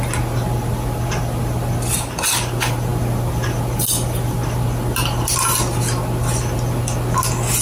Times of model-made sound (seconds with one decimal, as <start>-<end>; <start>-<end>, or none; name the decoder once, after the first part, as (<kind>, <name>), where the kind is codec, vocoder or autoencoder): none